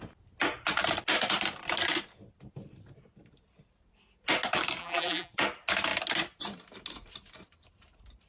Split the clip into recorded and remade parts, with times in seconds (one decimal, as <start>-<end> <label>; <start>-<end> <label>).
0.0-4.8 recorded; 4.8-5.3 remade; 5.3-8.3 recorded